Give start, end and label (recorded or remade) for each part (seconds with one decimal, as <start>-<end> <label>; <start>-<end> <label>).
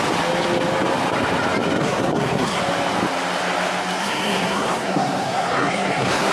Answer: 0.0-1.8 recorded; 1.8-2.6 remade; 2.6-4.0 recorded; 4.0-6.3 remade